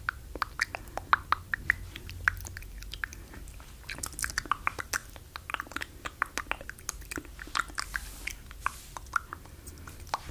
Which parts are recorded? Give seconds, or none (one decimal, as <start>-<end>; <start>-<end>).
0.0-10.3